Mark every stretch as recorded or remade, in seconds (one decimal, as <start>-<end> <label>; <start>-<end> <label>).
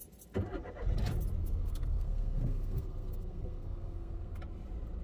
0.0-1.4 recorded; 1.4-4.4 remade; 4.4-5.0 recorded